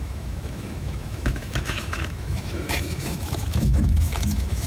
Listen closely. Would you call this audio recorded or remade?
remade